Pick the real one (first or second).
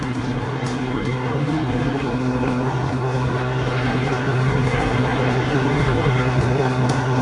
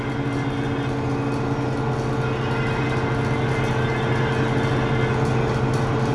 second